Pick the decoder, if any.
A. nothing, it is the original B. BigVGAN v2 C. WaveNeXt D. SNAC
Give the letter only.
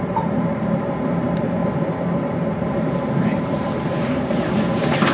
B